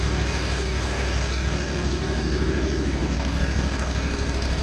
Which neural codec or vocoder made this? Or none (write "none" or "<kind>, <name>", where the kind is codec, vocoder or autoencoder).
codec, DAC